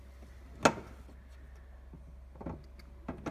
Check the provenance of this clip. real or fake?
real